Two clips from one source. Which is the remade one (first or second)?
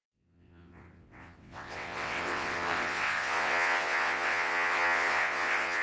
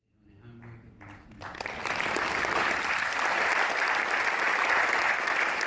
first